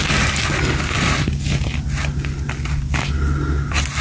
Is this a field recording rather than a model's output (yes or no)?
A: yes